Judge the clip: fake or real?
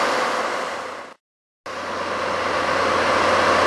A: real